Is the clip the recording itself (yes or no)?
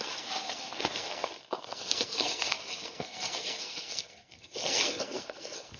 no